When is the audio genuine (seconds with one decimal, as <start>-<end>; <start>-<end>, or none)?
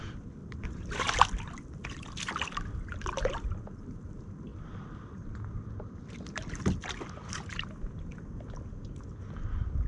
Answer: 0.0-0.4; 1.1-9.9